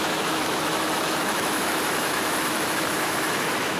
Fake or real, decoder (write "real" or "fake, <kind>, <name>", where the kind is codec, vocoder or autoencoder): fake, autoencoder, DAC-VAE